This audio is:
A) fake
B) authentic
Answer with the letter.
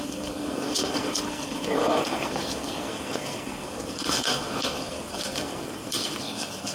A